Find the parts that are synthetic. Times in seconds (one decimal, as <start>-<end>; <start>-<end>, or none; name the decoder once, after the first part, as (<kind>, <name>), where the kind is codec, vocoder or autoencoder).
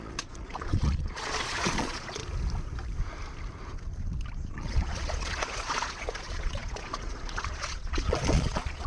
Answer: 0.0-2.2 (vocoder, Vocos); 4.5-8.9